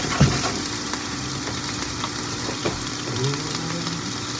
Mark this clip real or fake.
real